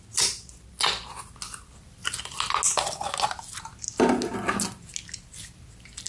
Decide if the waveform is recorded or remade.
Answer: recorded